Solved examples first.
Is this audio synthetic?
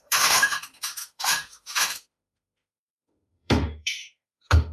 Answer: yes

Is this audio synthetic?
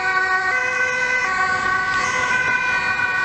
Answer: no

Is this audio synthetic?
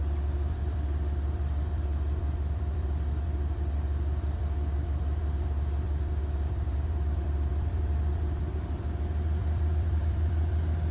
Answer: yes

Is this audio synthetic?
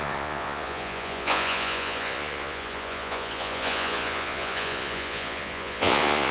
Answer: yes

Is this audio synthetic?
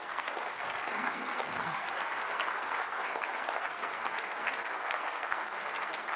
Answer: yes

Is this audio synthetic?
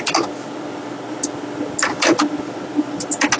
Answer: no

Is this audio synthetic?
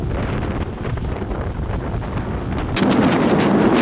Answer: no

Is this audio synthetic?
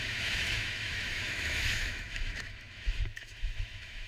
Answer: yes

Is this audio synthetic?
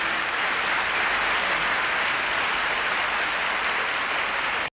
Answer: no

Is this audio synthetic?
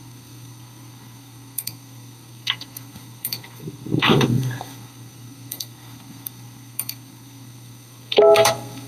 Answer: yes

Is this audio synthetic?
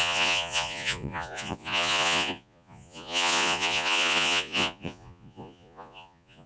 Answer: yes